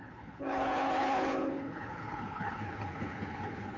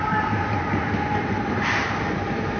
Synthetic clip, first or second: first